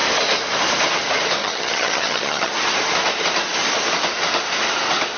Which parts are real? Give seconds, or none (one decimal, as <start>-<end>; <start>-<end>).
0.0-1.4; 2.5-5.2